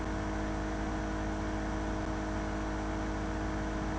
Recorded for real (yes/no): yes